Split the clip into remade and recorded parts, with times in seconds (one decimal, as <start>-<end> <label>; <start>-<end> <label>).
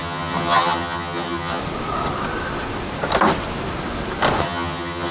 0.0-1.6 remade; 1.6-4.4 recorded; 4.4-5.1 remade